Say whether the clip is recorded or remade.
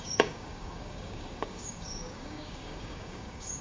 remade